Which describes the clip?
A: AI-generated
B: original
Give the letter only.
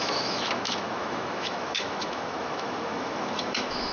A